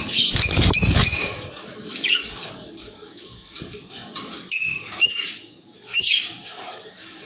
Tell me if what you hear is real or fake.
fake